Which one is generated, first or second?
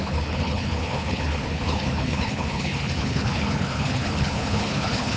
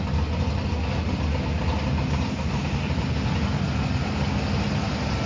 first